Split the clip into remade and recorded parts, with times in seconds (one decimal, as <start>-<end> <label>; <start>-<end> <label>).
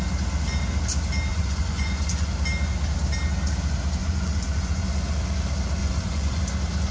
0.0-1.3 recorded; 1.3-2.3 remade; 2.3-4.0 recorded; 4.0-4.9 remade; 4.9-5.8 recorded; 5.8-6.4 remade; 6.4-6.9 recorded